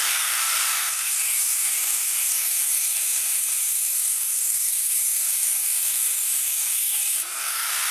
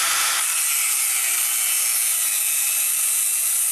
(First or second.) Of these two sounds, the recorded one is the second